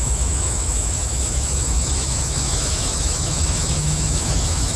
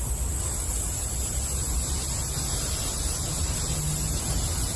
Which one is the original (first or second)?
second